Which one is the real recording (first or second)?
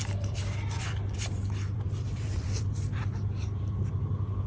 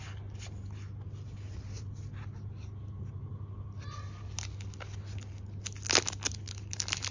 second